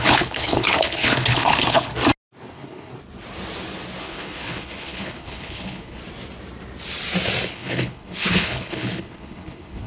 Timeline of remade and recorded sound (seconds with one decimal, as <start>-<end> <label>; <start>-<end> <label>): 0.0-1.9 remade; 1.9-2.5 recorded; 2.5-2.9 remade; 2.9-4.0 recorded; 4.0-6.0 remade; 6.0-7.5 recorded; 7.5-9.9 remade